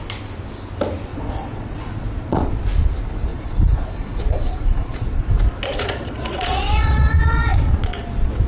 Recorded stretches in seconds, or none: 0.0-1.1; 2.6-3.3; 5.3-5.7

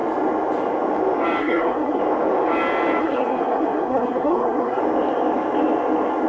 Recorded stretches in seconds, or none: 0.0-1.4; 2.0-3.0; 4.8-6.3

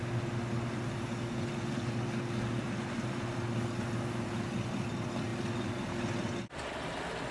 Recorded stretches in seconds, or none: 0.0-7.3

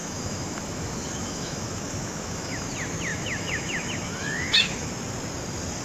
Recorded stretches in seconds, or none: 2.7-3.1; 4.9-5.8

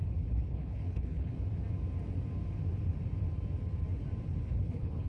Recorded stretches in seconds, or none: 1.3-4.4